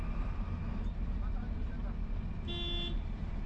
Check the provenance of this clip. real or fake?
real